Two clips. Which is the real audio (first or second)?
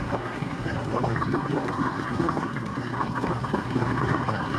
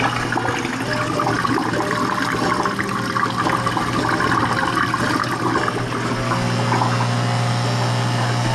second